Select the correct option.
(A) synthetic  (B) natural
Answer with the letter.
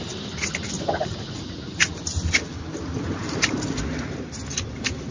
B